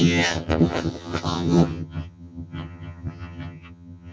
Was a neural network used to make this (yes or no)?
yes